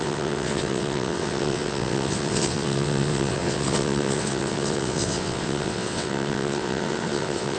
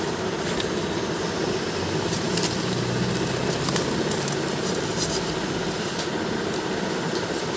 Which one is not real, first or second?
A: first